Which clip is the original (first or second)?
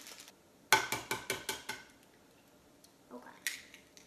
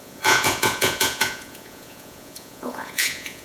first